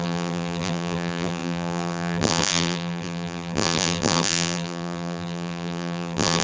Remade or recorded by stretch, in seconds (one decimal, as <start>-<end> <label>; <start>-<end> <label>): 0.0-6.4 remade